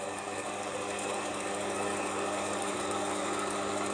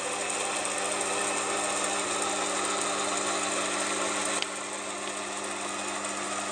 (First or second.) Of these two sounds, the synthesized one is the first